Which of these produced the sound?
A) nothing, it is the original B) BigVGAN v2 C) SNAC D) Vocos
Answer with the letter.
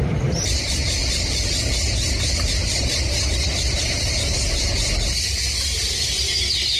A